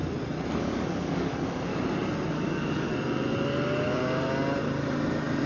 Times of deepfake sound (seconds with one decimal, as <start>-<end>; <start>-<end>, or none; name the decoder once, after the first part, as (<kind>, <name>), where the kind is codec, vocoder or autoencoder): 0.6-1.7 (codec, DAC); 2.3-2.9